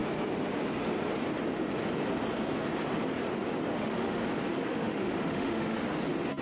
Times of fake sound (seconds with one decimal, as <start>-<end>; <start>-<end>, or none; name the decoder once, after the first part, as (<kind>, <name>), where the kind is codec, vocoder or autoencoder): 3.8-4.2 (autoencoder, DAC-VAE); 4.7-5.9

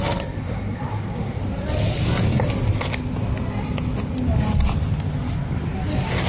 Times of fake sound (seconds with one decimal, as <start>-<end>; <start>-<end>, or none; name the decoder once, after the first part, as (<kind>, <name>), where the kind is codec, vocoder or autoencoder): 0.4-1.4 (codec, SNAC)

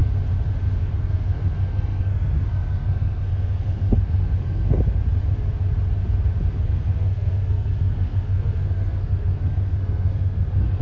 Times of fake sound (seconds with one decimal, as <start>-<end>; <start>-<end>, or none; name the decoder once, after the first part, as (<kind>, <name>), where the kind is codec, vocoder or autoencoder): 0.8-5.0 (codec, SNAC); 6.6-10.8